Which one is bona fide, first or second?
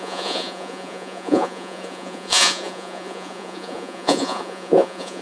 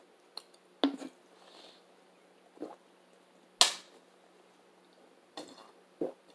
second